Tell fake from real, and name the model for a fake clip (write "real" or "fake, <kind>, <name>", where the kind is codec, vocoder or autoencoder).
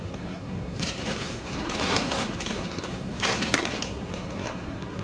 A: fake, codec, SNAC